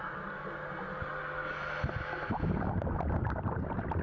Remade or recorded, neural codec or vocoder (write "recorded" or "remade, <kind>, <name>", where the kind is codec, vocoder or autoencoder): recorded